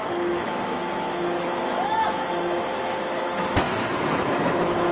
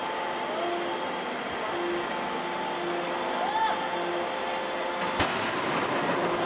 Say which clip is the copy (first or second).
first